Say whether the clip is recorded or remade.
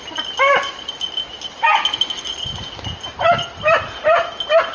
recorded